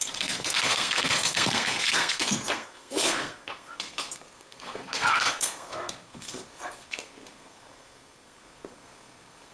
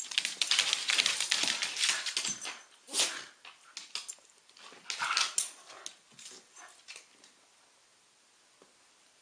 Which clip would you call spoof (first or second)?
first